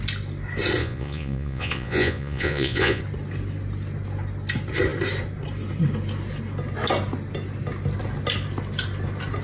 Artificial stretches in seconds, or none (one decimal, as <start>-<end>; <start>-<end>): 0.8-3.0